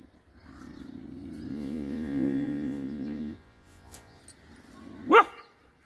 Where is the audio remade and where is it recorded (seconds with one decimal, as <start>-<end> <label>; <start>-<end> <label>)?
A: 0.0-1.5 recorded; 1.5-4.2 remade; 4.2-5.8 recorded